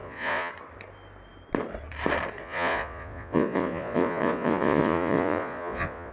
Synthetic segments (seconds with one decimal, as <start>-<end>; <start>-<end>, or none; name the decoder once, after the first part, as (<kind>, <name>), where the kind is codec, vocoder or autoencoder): 0.0-0.5 (vocoder, Vocos); 2.4-6.1